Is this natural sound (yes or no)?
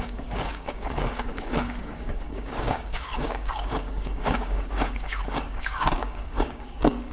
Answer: no